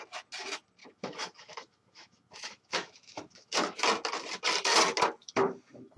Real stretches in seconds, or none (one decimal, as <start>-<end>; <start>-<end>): 0.0-0.8; 3.8-5.2